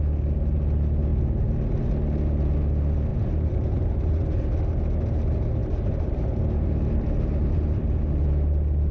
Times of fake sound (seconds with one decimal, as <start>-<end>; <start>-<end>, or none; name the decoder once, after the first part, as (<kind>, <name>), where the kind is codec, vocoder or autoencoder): 1.1-1.9 (vocoder, BigVGAN v2); 3.1-4.2; 5.6-8.0